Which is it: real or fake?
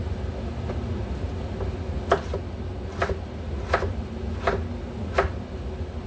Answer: real